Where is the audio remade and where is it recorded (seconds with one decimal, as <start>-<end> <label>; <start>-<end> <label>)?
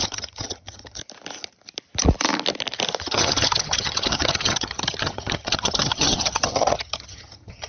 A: 0.0-1.0 remade; 1.0-3.0 recorded; 3.0-7.7 remade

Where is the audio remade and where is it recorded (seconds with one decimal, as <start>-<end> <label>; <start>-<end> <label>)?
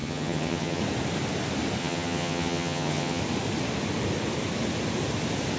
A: 0.0-0.8 remade; 0.8-1.8 recorded; 1.8-3.2 remade; 3.2-5.6 recorded